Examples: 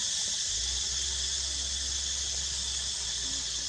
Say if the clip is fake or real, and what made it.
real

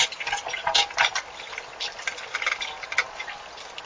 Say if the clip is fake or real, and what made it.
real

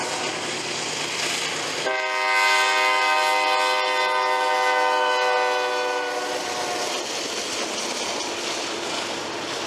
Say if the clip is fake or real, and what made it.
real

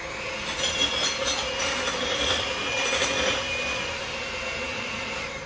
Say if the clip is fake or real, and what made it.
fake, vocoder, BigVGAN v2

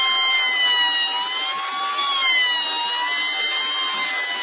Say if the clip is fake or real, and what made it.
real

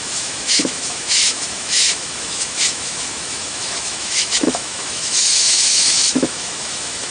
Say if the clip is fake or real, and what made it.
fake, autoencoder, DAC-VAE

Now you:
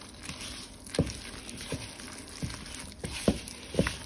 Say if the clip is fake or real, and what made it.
real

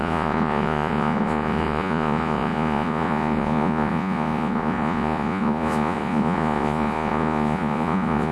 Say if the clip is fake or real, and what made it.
fake, vocoder, Vocos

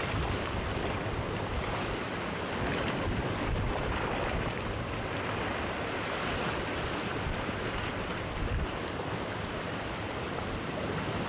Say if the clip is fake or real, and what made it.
real